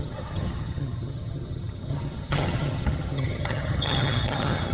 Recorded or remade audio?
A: remade